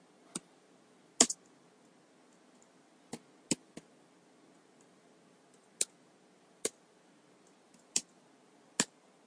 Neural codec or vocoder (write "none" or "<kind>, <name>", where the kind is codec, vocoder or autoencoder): none